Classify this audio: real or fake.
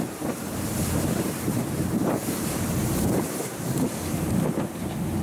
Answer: fake